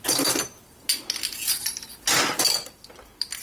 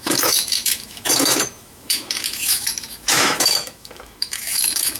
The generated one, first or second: second